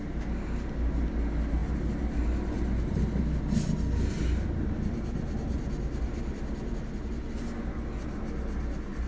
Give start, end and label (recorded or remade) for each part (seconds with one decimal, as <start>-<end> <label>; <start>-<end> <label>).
0.0-9.1 recorded

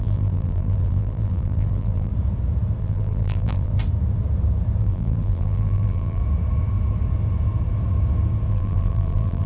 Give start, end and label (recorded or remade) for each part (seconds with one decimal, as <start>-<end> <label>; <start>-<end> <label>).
0.0-2.1 remade; 2.1-2.8 recorded; 2.8-3.7 remade; 3.7-4.8 recorded; 4.8-6.2 remade; 6.2-8.5 recorded; 8.5-9.5 remade

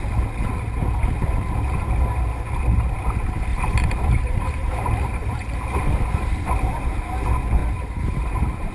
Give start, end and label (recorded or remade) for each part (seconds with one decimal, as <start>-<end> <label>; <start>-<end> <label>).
0.0-3.5 recorded; 3.5-6.5 remade; 6.5-7.6 recorded; 7.6-8.7 remade

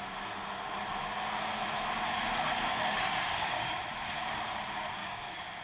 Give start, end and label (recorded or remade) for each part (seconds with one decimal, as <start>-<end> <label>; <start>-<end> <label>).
0.0-2.7 recorded; 2.7-3.8 remade; 3.8-5.0 recorded; 5.0-5.6 remade

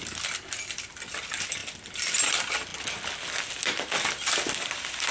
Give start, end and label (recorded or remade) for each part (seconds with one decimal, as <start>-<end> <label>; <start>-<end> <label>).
0.0-5.1 recorded

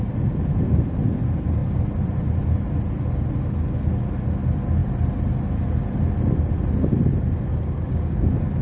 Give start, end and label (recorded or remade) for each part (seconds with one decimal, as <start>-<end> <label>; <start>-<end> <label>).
0.0-7.5 recorded; 7.5-8.6 remade

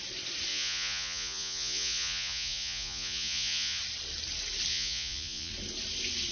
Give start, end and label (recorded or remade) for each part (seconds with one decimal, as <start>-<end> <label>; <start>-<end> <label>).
0.0-0.5 recorded; 0.5-3.8 remade; 3.8-4.7 recorded; 4.7-5.5 remade; 5.5-6.3 recorded